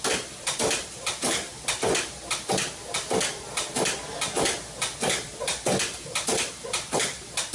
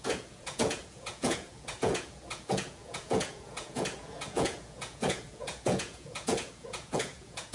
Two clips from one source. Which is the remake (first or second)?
second